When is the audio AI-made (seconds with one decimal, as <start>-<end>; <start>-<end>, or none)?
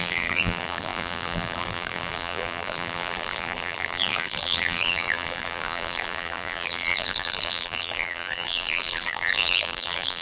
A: 0.0-10.2